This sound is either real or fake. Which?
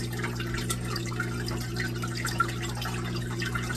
real